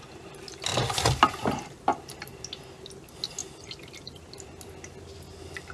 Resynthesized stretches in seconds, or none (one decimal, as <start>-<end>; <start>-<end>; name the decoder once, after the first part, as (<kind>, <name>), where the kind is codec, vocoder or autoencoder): none